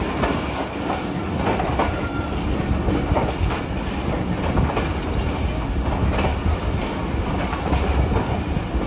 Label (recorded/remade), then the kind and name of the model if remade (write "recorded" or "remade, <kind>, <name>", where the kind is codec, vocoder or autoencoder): recorded